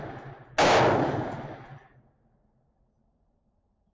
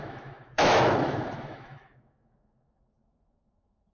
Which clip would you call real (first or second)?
first